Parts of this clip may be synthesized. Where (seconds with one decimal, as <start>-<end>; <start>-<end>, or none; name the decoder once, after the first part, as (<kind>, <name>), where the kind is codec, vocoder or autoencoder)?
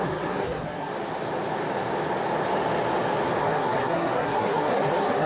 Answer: 0.0-0.9 (codec, SNAC); 3.4-5.3